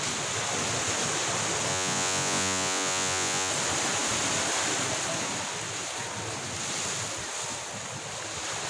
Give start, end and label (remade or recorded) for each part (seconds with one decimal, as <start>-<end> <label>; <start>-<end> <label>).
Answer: 0.0-1.7 recorded; 1.7-3.5 remade; 3.5-8.7 recorded